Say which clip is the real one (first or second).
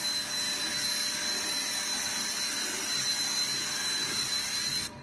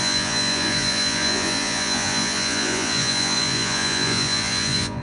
first